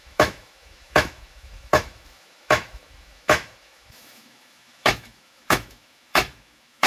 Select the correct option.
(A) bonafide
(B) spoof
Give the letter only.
B